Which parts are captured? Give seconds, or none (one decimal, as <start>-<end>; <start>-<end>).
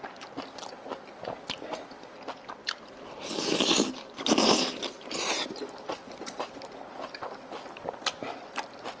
0.0-9.0